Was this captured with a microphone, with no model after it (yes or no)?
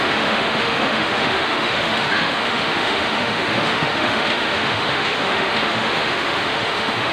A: no